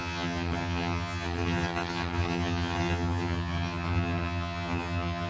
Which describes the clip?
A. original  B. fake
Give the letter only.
B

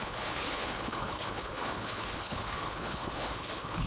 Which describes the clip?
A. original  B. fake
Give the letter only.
B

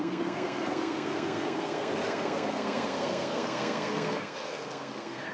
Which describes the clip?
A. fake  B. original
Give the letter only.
A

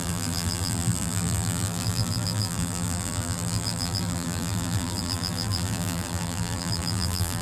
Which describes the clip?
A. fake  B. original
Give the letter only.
A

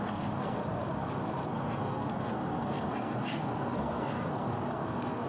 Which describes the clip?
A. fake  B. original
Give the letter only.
A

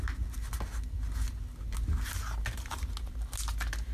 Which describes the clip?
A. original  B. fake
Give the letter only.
A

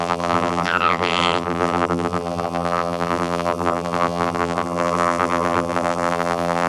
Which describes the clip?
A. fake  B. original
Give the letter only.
A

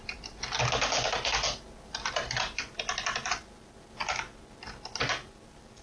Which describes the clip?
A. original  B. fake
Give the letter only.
A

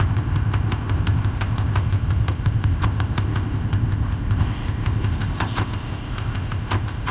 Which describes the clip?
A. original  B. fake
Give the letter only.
B